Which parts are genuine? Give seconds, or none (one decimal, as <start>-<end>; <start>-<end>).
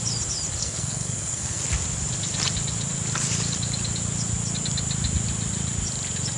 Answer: 0.0-0.6; 1.6-6.4